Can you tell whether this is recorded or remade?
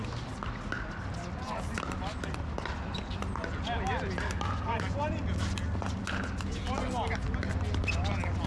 recorded